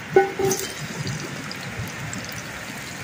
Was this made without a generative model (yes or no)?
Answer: yes